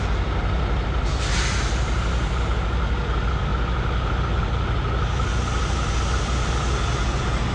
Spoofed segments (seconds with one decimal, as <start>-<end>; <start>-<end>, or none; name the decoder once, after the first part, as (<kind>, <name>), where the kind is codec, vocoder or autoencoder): none